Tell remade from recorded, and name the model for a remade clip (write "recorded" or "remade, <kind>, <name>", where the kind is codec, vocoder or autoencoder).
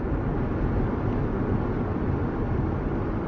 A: recorded